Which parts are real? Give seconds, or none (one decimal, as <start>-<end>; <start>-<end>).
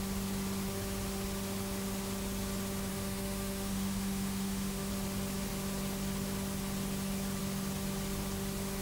0.0-2.9; 4.9-8.8